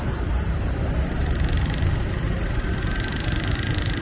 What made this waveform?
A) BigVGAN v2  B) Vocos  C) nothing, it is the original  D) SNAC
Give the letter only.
A